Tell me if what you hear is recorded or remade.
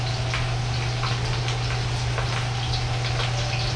recorded